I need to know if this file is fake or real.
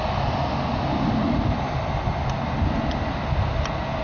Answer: real